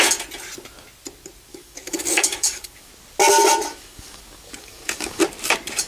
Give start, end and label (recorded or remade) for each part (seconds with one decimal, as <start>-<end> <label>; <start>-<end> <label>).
0.0-1.5 recorded; 1.5-2.9 remade; 2.9-3.7 recorded; 3.7-5.2 remade; 5.2-5.9 recorded